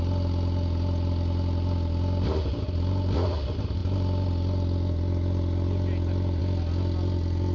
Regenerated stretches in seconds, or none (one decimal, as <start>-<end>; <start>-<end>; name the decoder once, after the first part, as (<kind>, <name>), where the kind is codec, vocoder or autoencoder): none